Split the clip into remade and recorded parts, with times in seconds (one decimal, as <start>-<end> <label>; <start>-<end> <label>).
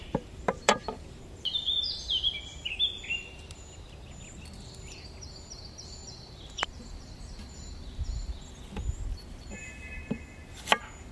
0.0-2.7 remade; 2.7-6.0 recorded; 6.0-6.8 remade; 6.8-11.1 recorded